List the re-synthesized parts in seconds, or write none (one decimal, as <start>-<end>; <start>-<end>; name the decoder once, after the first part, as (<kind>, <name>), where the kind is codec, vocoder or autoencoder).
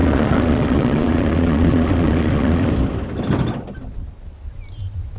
0.0-2.7 (vocoder, Vocos)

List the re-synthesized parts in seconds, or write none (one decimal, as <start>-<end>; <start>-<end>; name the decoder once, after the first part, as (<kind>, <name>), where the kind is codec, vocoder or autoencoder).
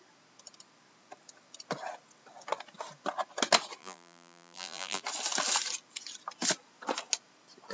3.8-5.0 (vocoder, BigVGAN v2)